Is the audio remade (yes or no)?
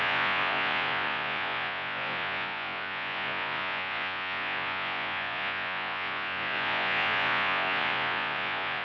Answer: yes